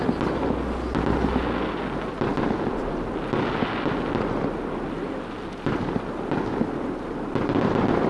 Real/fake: real